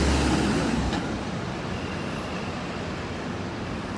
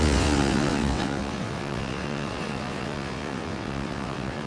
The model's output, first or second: second